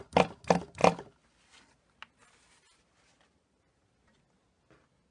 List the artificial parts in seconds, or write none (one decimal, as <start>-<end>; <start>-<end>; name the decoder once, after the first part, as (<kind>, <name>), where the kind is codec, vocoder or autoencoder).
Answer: none